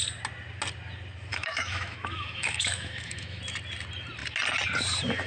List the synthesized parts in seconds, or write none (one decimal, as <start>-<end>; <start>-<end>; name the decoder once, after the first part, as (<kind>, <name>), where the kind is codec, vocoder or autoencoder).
1.3-3.4 (autoencoder, DAC-VAE)